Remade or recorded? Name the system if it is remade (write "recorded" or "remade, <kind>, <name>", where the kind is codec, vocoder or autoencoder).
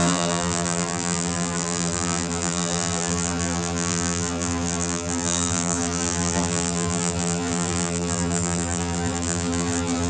remade, vocoder, BigVGAN v2